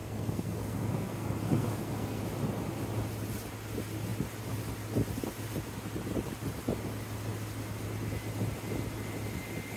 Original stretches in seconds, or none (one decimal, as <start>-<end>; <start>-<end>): 2.2-9.8